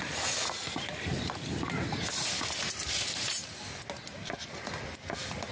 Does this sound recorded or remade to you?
recorded